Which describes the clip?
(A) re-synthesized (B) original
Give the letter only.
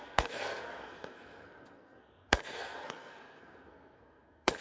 A